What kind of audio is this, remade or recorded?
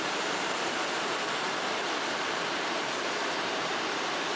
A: remade